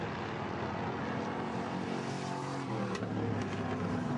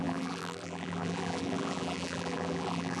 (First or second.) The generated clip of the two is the second